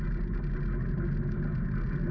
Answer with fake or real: real